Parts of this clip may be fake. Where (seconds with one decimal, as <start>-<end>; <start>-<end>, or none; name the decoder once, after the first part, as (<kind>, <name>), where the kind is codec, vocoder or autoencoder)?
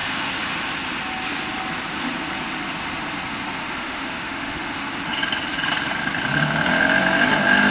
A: 3.6-4.7 (autoencoder, DAC-VAE)